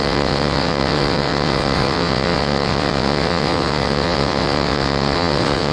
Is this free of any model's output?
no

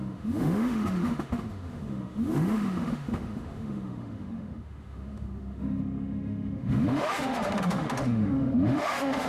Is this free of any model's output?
no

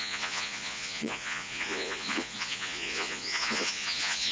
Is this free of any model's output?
no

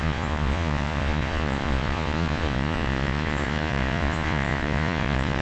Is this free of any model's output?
no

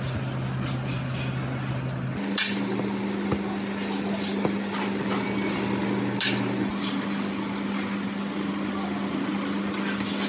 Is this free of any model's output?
yes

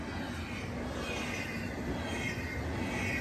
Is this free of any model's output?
yes